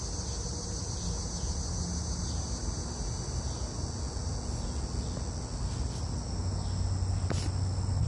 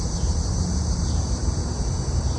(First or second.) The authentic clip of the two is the first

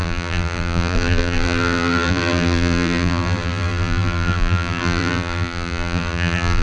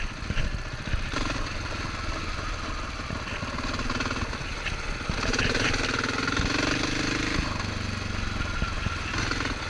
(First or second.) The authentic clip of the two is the second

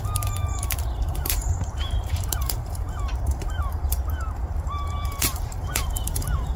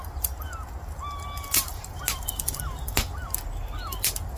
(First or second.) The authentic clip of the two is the second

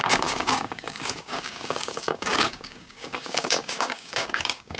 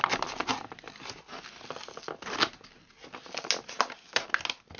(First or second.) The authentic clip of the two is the second